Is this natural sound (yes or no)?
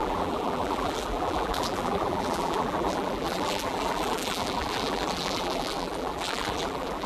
no